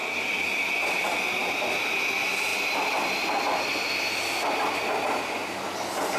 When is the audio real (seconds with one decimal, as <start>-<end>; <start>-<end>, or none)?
0.0-6.2